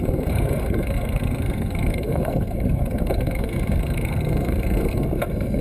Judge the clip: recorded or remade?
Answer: remade